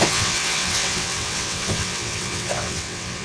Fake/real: fake